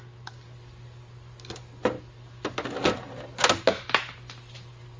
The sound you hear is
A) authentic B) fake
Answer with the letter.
A